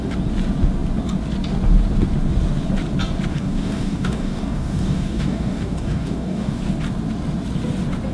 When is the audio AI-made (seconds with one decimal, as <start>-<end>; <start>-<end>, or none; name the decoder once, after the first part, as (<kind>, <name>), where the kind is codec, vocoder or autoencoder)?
3.3-6.6 (codec, DAC)